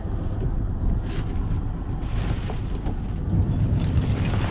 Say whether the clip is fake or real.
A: real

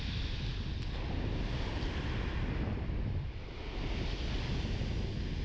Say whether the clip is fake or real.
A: real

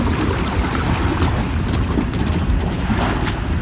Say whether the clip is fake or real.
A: fake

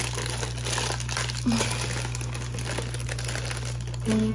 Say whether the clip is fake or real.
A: real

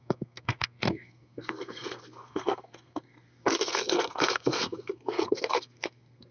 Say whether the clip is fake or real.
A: fake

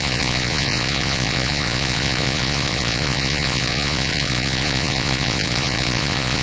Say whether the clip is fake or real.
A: fake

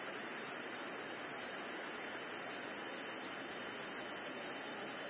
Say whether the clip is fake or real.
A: real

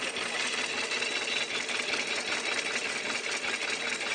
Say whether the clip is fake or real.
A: real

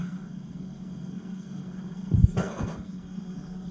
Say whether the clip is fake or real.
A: fake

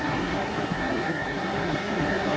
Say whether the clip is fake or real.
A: fake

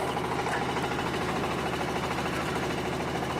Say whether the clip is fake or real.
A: real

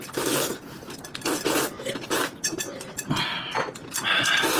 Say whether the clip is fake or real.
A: real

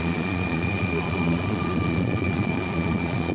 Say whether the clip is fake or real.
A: fake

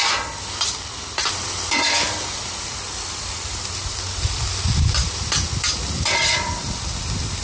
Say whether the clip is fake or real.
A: fake